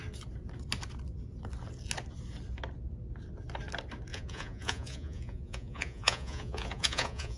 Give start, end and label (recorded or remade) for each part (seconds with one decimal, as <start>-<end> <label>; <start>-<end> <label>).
0.0-4.1 recorded; 4.1-7.4 remade